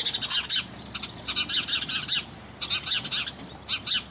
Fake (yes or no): no